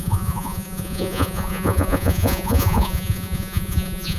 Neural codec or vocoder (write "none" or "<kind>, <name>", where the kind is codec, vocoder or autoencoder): vocoder, Vocos